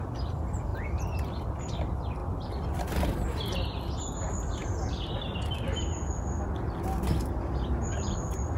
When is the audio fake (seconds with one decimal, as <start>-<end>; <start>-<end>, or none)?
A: none